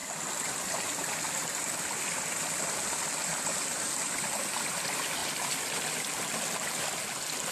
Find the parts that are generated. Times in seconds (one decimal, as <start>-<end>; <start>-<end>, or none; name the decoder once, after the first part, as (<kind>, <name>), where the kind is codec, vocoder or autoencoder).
3.3-4.7 (vocoder, BigVGAN v2)